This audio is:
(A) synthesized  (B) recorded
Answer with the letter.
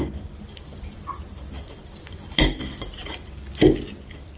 B